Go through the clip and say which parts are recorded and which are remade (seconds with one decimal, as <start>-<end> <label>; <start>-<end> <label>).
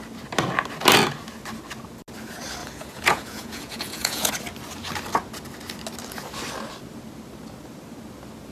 0.0-2.6 recorded; 2.6-4.3 remade; 4.3-8.5 recorded